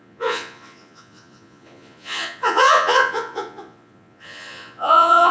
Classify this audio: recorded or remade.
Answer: remade